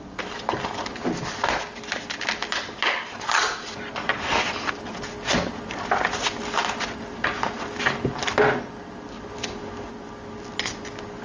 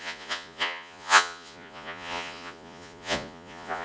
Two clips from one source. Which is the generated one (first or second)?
second